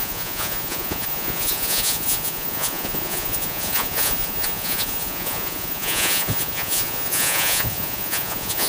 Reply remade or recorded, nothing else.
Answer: remade